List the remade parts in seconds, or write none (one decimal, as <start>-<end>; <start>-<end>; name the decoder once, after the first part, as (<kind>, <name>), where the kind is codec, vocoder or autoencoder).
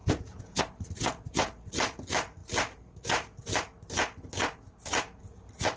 0.0-0.6 (vocoder, Vocos)